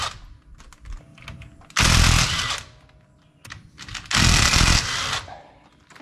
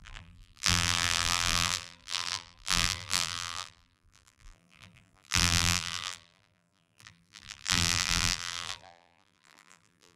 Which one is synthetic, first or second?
second